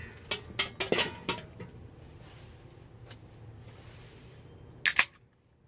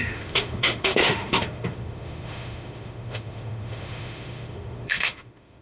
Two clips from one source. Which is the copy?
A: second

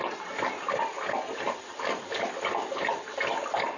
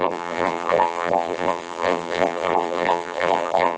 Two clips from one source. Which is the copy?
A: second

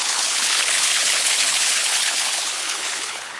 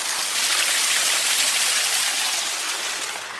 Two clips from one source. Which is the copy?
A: first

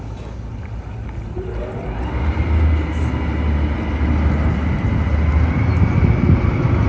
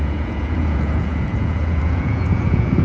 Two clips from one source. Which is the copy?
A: second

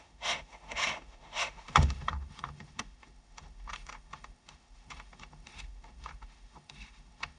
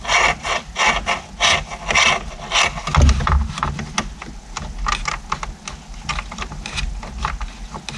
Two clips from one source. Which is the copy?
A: first